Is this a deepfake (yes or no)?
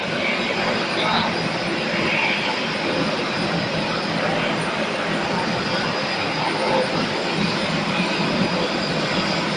no